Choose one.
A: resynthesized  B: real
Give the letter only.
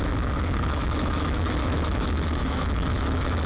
A